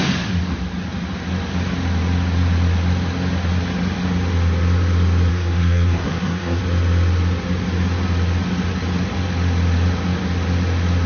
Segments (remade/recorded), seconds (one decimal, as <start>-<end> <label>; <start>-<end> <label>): 0.0-5.3 recorded; 5.3-6.6 remade; 6.6-11.1 recorded